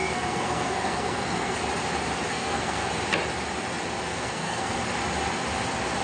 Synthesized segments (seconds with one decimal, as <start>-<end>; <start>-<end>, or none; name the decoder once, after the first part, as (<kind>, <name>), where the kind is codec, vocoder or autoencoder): 0.0-1.6 (codec, SNAC); 2.3-2.9; 4.1-4.8